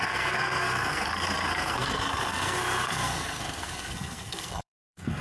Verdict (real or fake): fake